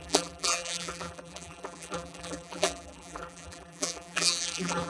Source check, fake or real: fake